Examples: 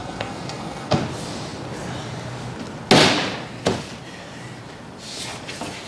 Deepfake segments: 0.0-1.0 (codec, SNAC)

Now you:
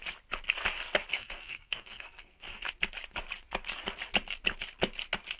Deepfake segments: 1.1-2.7 (codec, SNAC)

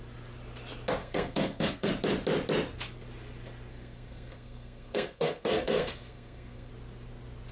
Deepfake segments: 1.0-1.9 (codec, SNAC); 3.7-6.7

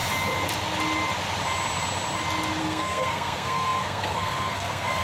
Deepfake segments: 2.6-5.0 (codec, SNAC)

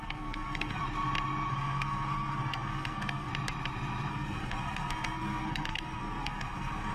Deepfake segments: 0.0-0.8 (codec, SNAC); 1.5-3.3; 4.1-6.9

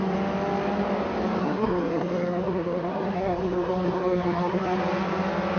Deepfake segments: 1.4-4.8 (codec, SNAC)

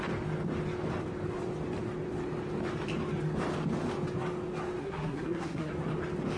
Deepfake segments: 4.8-5.7 (codec, SNAC)